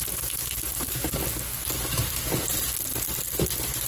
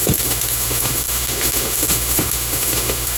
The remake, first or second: second